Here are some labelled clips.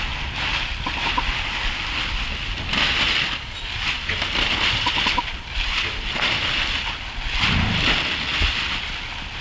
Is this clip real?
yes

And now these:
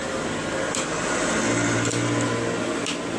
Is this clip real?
yes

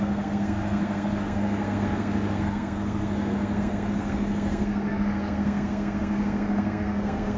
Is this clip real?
no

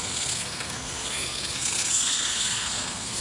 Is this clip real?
no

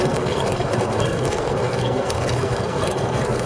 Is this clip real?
no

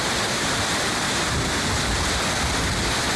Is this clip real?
yes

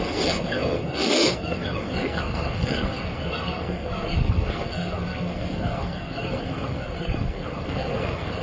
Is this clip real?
no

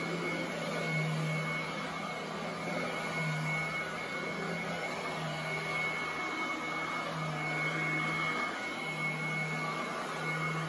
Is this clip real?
yes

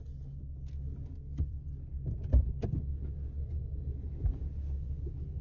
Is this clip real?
yes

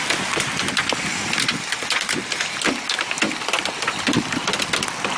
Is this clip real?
yes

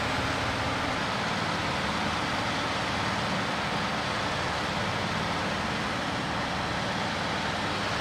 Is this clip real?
yes